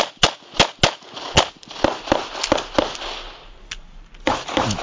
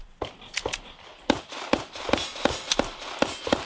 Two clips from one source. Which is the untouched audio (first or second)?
first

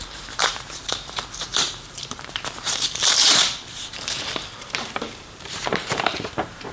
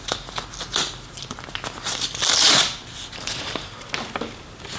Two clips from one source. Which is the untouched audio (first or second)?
second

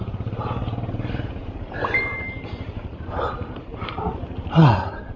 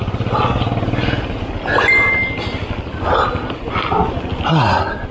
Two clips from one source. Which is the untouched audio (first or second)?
second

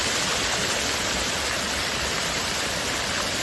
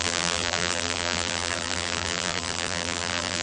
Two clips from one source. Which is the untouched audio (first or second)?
first